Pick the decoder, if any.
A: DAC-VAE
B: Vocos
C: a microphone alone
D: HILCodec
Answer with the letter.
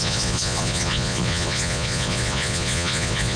B